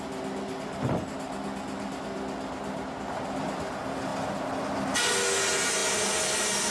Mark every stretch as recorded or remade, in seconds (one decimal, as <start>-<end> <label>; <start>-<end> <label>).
0.0-6.7 recorded